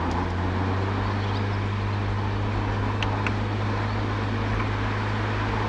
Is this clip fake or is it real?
real